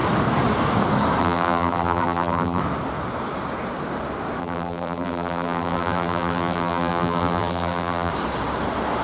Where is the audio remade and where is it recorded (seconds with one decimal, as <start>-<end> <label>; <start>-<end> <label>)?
0.0-1.2 recorded; 1.2-2.6 remade; 2.6-4.4 recorded; 4.4-8.1 remade; 8.1-9.0 recorded